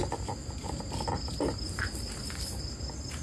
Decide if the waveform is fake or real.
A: real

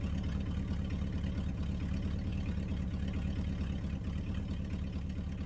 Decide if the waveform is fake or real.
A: real